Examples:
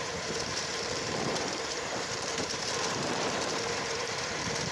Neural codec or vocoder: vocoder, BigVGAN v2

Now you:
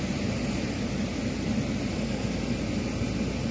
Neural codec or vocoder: none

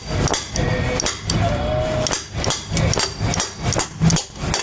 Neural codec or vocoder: none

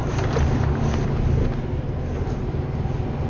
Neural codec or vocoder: none